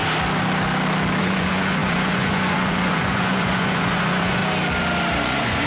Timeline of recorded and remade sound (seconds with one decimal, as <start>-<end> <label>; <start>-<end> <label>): 0.0-1.2 recorded; 1.2-4.4 remade; 4.4-5.2 recorded; 5.2-5.7 remade